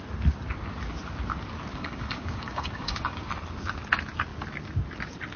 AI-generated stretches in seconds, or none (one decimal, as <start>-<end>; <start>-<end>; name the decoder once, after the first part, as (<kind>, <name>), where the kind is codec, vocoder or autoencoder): 1.7-3.3 (codec, DAC)